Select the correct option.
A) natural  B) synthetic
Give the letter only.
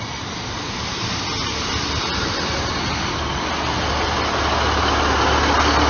A